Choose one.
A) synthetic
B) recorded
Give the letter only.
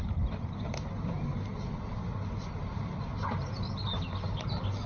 B